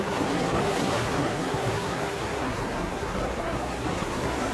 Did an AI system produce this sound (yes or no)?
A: yes